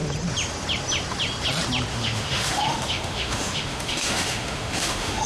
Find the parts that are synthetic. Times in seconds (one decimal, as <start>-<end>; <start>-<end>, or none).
1.9-5.3